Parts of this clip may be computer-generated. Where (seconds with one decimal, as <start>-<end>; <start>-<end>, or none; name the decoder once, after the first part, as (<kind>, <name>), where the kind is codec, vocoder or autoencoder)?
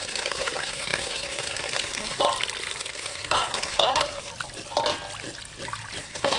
0.0-2.2 (codec, SNAC); 2.8-4.3; 6.0-6.4